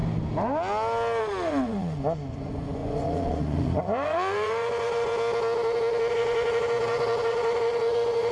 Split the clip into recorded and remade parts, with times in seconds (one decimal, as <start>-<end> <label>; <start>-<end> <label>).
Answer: 0.0-1.2 recorded; 1.2-5.1 remade; 5.1-6.1 recorded; 6.1-8.3 remade

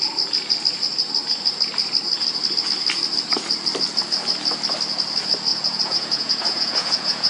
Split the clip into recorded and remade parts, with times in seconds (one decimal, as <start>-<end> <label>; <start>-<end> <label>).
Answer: 0.0-5.5 recorded; 5.5-7.3 remade

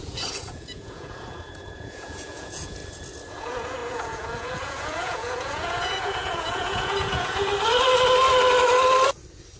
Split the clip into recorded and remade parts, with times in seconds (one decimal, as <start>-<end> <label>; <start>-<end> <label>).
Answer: 0.0-2.8 remade; 2.8-3.3 recorded; 3.3-7.5 remade; 7.5-9.6 recorded

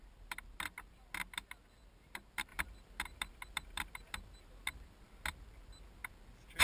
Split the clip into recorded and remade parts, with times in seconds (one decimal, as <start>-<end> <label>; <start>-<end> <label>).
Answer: 0.0-6.6 recorded

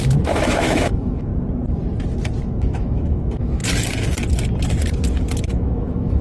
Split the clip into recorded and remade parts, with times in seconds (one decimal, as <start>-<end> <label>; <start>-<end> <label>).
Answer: 0.0-1.3 remade; 1.3-2.4 recorded; 2.4-3.6 remade; 3.6-5.4 recorded; 5.4-6.2 remade

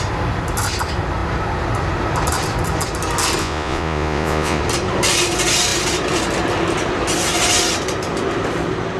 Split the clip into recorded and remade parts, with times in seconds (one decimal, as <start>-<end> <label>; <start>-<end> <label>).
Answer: 0.0-3.4 recorded; 3.4-4.6 remade; 4.6-9.0 recorded

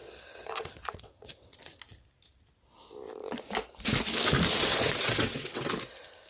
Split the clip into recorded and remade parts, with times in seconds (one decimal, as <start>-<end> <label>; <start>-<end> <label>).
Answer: 0.0-1.6 remade; 1.6-4.6 recorded; 4.6-5.7 remade; 5.7-6.3 recorded

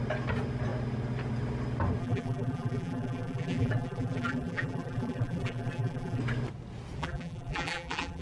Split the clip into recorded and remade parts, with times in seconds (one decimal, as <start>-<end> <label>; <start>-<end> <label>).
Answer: 0.0-2.0 recorded; 2.0-6.2 remade; 6.2-7.0 recorded; 7.0-8.2 remade